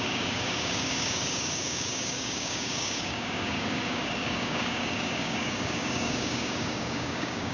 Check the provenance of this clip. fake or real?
fake